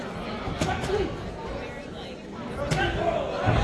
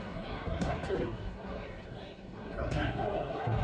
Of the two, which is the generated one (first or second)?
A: second